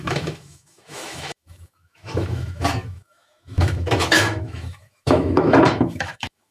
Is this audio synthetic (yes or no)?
yes